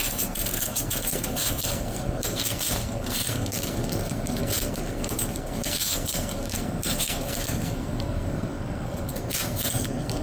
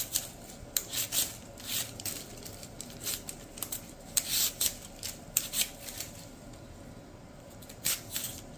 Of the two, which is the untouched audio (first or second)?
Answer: second